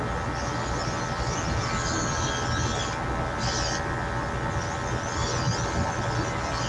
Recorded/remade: recorded